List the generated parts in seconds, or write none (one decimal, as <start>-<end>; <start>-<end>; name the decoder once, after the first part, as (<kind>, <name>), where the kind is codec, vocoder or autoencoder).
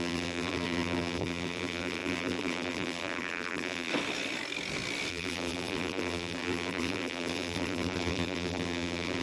0.0-3.9 (vocoder, BigVGAN v2); 5.1-9.2